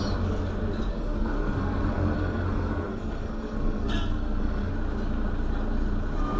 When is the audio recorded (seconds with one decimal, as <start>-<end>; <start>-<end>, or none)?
0.0-0.9; 4.7-6.4